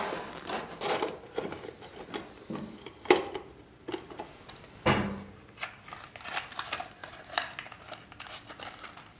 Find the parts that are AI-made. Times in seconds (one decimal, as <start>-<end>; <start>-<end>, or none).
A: none